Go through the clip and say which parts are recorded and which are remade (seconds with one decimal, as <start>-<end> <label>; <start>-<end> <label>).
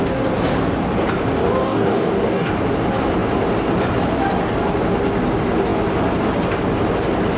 0.0-1.6 recorded; 1.6-2.5 remade; 2.5-7.4 recorded